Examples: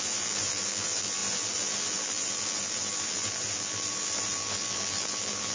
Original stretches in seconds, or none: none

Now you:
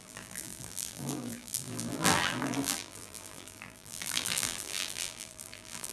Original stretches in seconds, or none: none

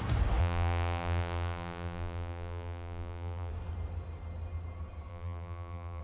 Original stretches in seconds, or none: 0.0-0.4; 3.5-5.1

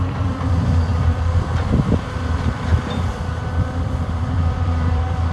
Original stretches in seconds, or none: 2.7-3.7